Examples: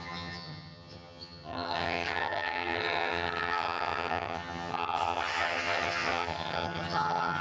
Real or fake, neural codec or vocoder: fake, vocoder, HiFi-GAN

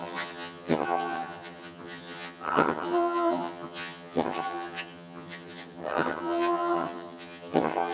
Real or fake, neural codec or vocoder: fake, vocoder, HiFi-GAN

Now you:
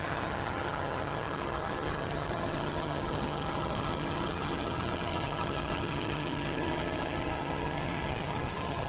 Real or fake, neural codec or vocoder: fake, vocoder, HiFi-GAN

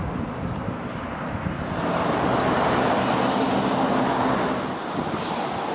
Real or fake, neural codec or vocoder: real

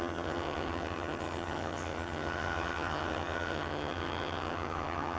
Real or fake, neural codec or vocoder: fake, vocoder, HiFi-GAN